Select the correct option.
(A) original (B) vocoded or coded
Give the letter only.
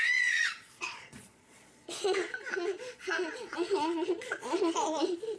B